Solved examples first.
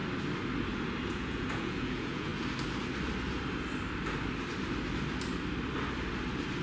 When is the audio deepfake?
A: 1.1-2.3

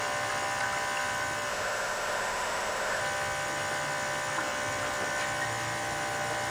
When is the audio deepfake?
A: 1.5-3.0